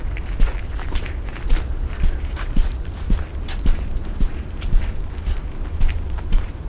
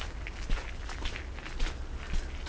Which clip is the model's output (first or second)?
first